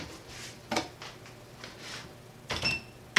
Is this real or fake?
real